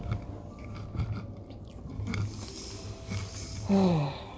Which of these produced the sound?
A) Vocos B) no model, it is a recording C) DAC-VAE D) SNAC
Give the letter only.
B